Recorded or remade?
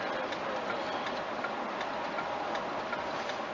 recorded